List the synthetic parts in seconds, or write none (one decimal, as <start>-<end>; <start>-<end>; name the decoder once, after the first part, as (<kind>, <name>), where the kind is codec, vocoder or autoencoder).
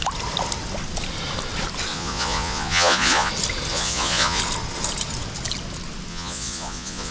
1.9-3.3 (vocoder, Vocos); 3.7-4.4; 6.1-7.1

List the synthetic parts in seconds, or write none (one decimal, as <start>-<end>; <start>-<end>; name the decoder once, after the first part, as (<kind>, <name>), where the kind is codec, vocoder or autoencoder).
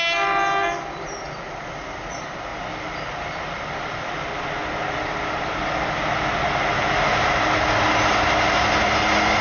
none